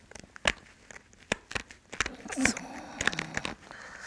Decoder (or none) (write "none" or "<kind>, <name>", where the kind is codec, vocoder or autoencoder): none